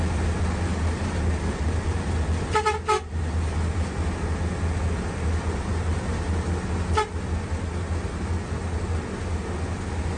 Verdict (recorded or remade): recorded